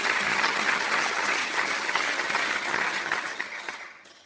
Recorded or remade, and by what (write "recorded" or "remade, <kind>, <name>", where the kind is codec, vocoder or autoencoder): remade, vocoder, HiFi-GAN